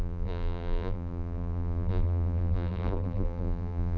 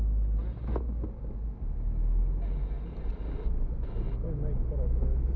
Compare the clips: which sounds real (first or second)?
second